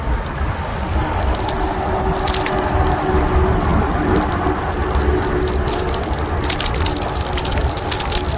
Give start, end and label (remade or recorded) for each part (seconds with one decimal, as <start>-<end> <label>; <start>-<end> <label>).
0.0-0.7 recorded; 0.7-1.2 remade; 1.2-8.4 recorded